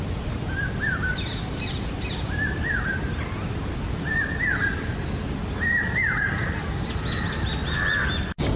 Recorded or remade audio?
recorded